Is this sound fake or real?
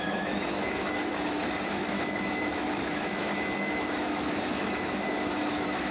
fake